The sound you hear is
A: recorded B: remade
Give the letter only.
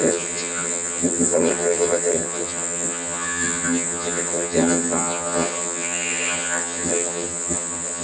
B